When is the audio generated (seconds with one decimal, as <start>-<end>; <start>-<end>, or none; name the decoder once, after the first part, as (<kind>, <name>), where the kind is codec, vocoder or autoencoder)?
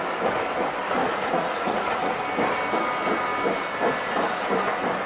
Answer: 1.0-2.2 (vocoder, Vocos)